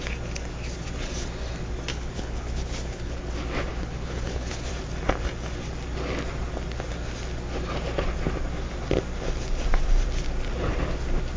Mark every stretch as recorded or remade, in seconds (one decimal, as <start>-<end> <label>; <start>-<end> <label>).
0.0-1.9 recorded; 1.9-3.3 remade; 3.3-3.7 recorded; 3.7-4.7 remade; 4.7-11.4 recorded